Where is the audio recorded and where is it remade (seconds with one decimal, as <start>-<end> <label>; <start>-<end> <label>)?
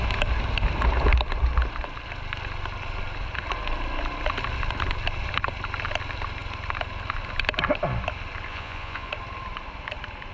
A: 0.0-8.5 recorded; 8.5-9.1 remade; 9.1-10.3 recorded